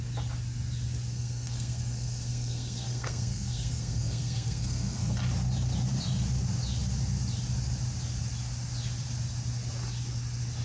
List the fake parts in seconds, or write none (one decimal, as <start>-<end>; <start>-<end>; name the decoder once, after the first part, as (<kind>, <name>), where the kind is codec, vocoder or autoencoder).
1.1-5.2 (codec, SNAC)